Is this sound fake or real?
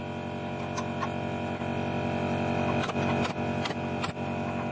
real